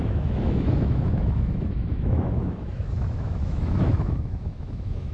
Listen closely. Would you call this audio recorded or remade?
remade